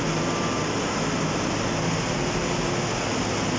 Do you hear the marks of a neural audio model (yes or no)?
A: no